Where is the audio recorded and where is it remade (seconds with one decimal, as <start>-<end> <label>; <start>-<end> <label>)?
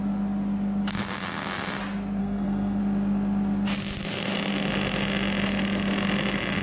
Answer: 0.0-2.2 recorded; 2.2-2.8 remade; 2.8-6.6 recorded